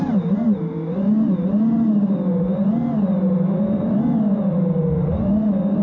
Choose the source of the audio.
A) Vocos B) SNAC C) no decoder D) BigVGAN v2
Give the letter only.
C